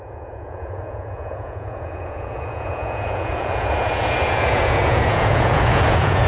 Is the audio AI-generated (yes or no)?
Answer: yes